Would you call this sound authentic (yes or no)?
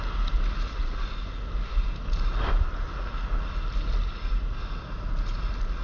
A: yes